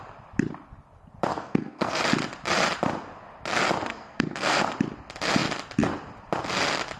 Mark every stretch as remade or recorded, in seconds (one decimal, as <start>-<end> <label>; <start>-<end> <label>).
0.0-1.3 recorded; 1.3-2.0 remade; 2.0-3.9 recorded; 3.9-4.7 remade; 4.7-7.0 recorded